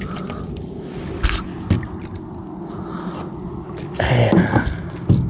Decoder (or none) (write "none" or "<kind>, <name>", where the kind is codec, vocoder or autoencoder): none